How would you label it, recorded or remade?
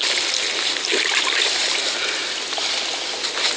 recorded